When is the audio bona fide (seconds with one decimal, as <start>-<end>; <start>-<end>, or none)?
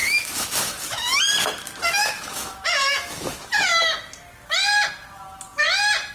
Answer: 1.2-2.0; 3.8-6.1